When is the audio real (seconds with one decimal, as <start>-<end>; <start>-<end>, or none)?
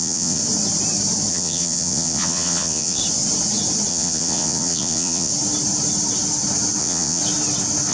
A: 0.4-1.3; 3.0-3.9; 5.3-6.8; 7.2-7.9